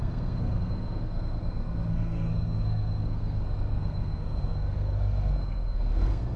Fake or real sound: fake